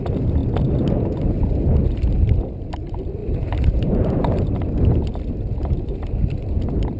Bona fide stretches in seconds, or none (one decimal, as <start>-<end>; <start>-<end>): 0.0-3.2; 4.4-7.0